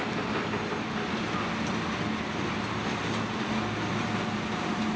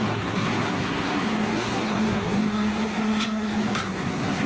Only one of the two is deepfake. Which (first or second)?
second